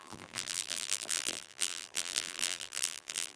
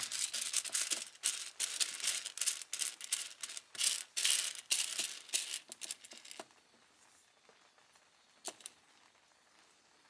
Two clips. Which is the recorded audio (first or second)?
second